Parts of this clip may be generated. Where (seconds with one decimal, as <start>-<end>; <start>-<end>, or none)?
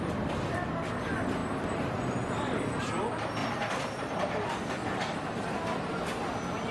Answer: 1.4-2.1; 3.4-4.1; 4.8-6.1